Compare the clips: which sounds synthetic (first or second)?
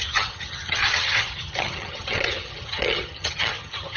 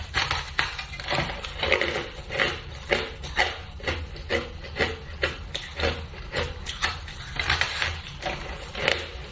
first